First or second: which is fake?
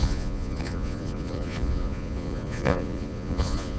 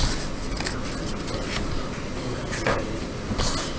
first